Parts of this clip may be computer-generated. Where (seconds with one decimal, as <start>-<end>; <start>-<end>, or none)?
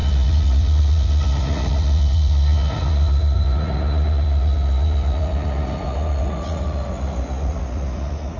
0.0-8.4